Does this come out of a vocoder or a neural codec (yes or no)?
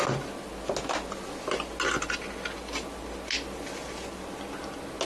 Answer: no